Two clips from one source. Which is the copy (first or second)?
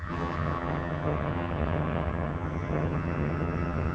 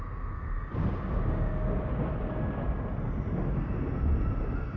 first